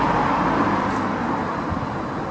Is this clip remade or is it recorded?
recorded